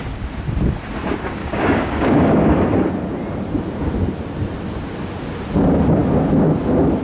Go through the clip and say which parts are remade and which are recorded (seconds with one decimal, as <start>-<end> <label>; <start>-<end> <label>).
0.0-1.4 recorded; 1.4-2.6 remade; 2.6-7.0 recorded